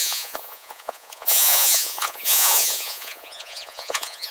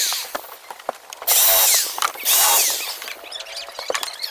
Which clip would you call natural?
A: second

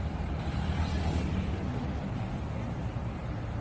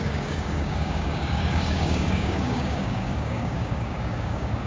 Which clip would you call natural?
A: first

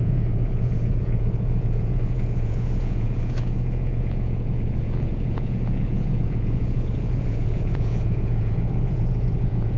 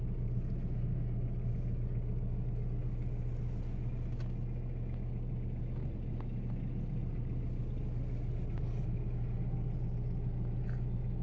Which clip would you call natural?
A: second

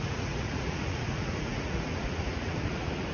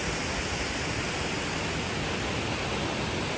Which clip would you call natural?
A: second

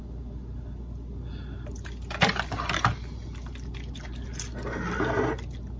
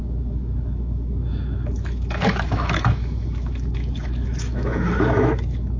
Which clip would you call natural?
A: first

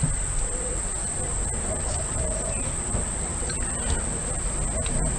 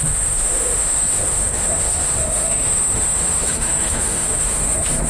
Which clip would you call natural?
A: first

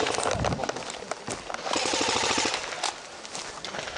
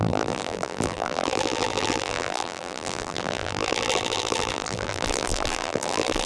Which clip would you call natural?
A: first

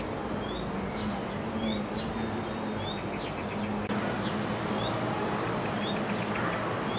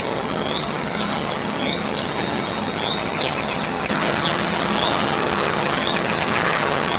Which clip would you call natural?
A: first